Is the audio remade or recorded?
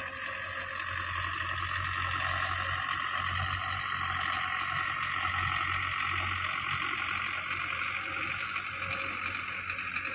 recorded